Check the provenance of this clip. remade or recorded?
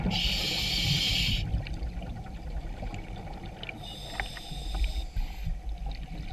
recorded